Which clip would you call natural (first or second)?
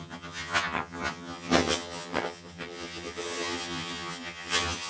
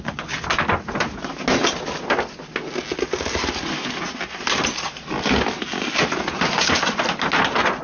second